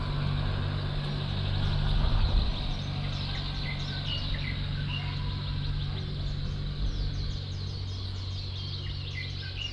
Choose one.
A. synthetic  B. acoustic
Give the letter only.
B